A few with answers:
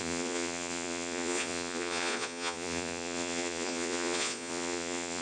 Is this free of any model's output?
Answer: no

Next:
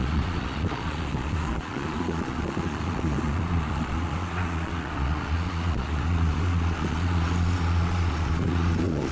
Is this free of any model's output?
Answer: no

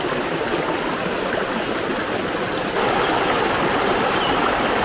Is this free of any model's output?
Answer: yes